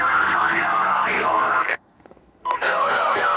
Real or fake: fake